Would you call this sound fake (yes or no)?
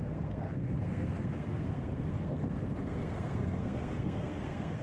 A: yes